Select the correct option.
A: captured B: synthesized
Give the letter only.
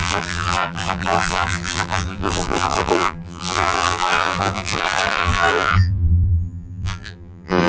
B